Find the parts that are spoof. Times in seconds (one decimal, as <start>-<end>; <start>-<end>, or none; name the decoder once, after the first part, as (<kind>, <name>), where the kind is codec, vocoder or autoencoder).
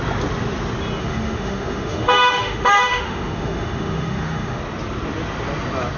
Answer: 1.0-4.6 (autoencoder, DAC-VAE)